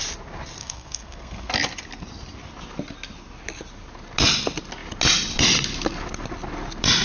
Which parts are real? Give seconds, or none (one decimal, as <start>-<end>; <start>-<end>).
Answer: 0.0-0.6; 1.5-7.0

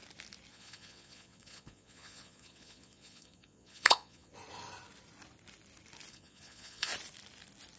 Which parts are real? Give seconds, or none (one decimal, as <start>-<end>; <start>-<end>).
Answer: 0.0-0.5; 4.3-6.1; 6.9-7.8

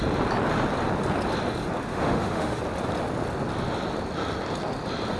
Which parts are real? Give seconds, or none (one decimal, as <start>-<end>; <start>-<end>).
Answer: 0.0-1.9; 2.6-5.2

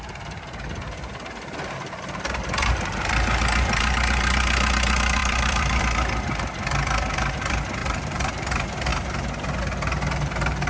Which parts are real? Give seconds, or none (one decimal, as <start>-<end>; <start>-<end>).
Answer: 0.0-5.2; 5.8-7.8; 8.3-10.7

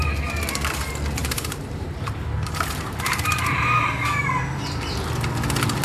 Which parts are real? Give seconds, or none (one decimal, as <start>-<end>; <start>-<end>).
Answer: 0.0-1.2; 4.4-5.8

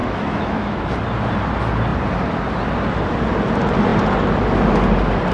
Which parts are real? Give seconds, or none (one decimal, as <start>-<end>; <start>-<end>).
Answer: 0.9-5.3